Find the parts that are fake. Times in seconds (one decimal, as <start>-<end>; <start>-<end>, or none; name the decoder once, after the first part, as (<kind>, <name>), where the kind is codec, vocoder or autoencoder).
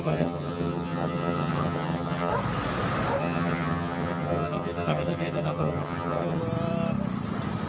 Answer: 0.0-2.3 (vocoder, HiFi-GAN); 3.2-6.4